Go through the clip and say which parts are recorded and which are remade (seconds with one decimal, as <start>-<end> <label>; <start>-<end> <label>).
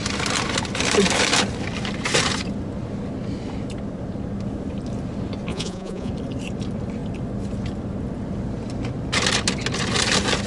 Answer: 0.0-5.5 recorded; 5.5-6.1 remade; 6.1-10.5 recorded